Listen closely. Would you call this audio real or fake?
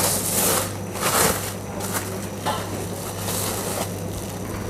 real